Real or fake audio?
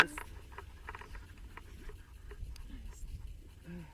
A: real